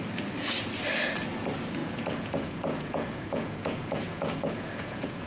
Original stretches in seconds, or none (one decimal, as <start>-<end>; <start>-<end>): 0.0-1.8